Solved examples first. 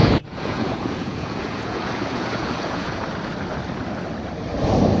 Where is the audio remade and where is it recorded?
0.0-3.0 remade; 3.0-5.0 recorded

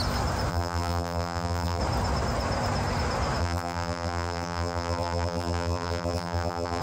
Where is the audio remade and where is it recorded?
0.0-0.5 recorded; 0.5-1.8 remade; 1.8-3.4 recorded; 3.4-6.8 remade

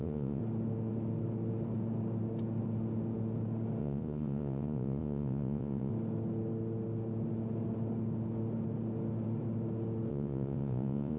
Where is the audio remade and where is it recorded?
0.0-0.4 remade; 0.4-3.8 recorded; 3.8-5.9 remade; 5.9-10.1 recorded; 10.1-11.2 remade

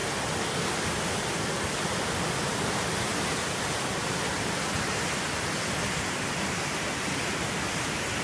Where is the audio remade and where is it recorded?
0.0-8.2 recorded